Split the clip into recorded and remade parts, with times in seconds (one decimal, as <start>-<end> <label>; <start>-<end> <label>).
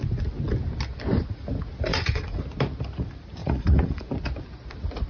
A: 0.0-1.9 recorded; 1.9-2.4 remade; 2.4-3.4 recorded; 3.4-4.0 remade; 4.0-5.1 recorded